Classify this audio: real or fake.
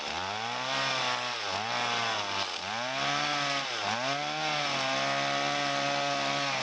real